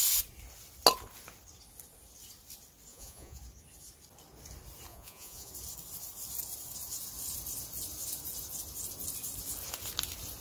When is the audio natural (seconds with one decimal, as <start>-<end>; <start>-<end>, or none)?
0.0-2.9; 3.4-4.9; 5.5-10.4

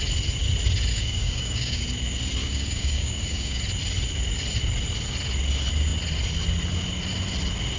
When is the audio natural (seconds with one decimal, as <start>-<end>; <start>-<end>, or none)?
0.0-0.9; 1.8-2.4; 3.6-7.8

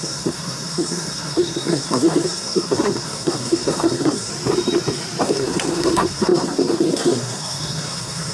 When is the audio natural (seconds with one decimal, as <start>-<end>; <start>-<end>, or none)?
4.3-5.2

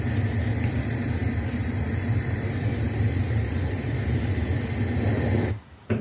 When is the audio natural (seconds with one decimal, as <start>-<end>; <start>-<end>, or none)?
0.0-1.2; 4.4-6.0

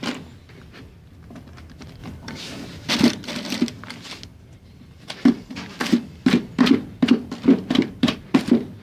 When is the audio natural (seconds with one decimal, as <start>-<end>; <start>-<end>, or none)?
0.0-2.0; 2.9-4.3; 5.8-8.8